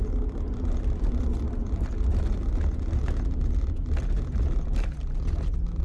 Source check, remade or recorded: recorded